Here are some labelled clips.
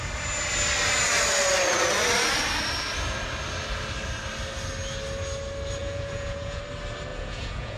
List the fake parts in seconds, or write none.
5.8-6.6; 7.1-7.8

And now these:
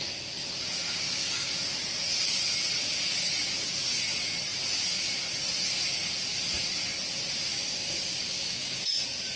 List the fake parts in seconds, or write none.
0.8-1.5; 7.5-8.8